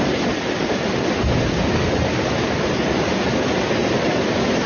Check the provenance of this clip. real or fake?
real